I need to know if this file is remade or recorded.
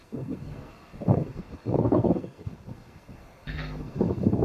remade